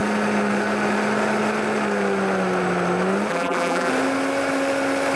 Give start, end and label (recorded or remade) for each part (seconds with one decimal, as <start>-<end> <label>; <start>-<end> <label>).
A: 0.0-3.3 recorded; 3.3-3.9 remade; 3.9-5.2 recorded